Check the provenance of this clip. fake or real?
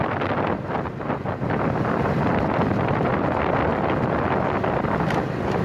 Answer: real